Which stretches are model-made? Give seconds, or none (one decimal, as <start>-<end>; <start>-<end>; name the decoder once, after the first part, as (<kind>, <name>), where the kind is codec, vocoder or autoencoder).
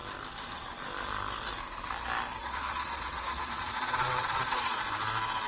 2.4-4.9 (vocoder, Vocos)